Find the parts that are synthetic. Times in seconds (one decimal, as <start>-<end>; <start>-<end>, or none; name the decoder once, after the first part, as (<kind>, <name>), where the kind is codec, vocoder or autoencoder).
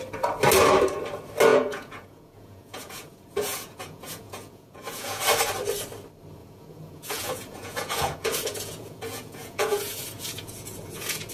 1.5-5.2 (vocoder, Vocos); 6.4-11.3